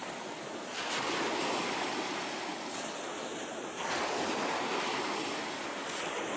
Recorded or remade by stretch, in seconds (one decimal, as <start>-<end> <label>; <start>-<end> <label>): 0.0-6.4 recorded

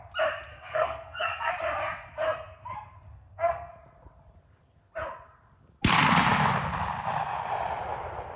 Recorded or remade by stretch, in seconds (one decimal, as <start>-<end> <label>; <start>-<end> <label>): 0.0-0.5 recorded; 0.5-1.5 remade; 1.5-3.1 recorded; 3.1-3.7 remade; 3.7-8.4 recorded

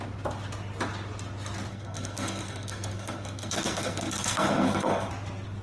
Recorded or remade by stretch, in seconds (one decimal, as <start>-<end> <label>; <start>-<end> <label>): 0.0-1.7 recorded; 1.7-5.1 remade; 5.1-5.6 recorded

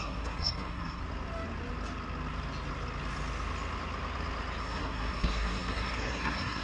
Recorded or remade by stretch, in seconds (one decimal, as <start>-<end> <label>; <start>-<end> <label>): 0.0-1.0 remade; 1.0-4.6 recorded; 4.6-6.6 remade